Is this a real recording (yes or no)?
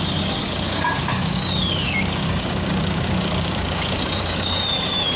no